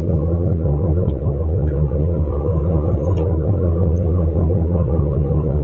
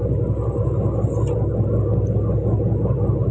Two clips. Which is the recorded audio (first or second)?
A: second